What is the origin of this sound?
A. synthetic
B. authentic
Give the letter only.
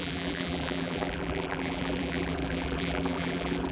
A